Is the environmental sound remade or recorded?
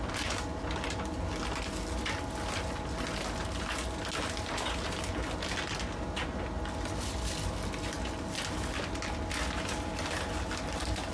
recorded